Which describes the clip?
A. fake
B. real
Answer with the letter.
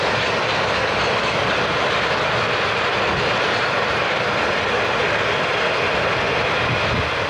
B